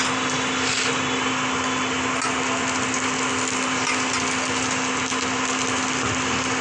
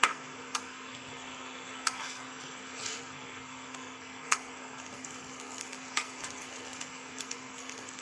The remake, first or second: second